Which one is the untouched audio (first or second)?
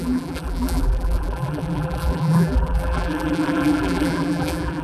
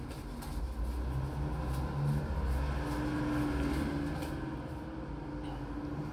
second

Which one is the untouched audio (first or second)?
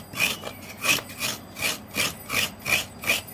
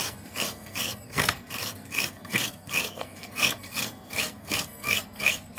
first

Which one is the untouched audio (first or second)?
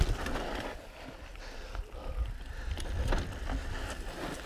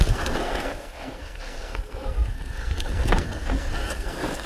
first